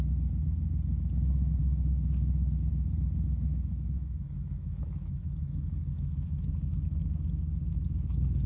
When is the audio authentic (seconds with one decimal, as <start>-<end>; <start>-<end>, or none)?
0.0-1.6; 2.7-3.5